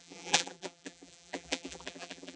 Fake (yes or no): yes